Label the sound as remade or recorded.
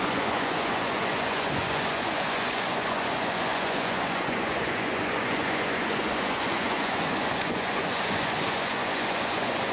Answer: remade